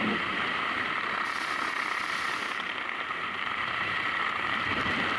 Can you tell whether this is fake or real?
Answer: fake